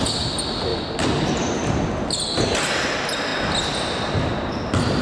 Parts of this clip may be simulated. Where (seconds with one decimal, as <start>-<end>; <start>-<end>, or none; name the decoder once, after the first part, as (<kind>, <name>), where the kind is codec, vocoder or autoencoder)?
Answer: none